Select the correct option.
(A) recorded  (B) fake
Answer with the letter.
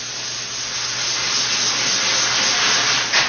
A